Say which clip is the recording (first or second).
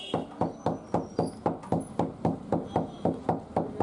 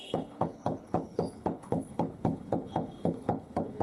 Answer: first